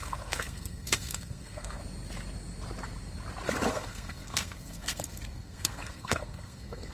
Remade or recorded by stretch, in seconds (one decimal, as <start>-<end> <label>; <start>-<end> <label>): 0.0-1.8 remade; 1.8-3.7 recorded; 3.7-6.9 remade